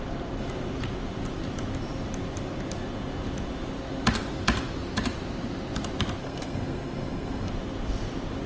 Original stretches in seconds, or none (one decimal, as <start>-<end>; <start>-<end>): 0.0-6.2; 7.5-8.5